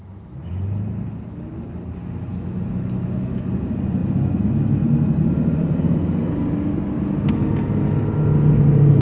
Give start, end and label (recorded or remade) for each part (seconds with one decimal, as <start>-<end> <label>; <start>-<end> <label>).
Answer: 0.0-2.3 recorded; 2.3-3.3 remade; 3.3-9.0 recorded